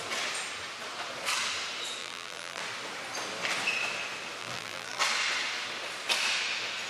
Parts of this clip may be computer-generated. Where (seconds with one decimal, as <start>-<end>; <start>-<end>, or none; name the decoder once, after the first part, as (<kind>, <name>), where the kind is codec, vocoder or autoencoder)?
2.0-2.6 (vocoder, BigVGAN v2); 4.4-5.0